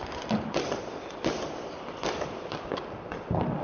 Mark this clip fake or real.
fake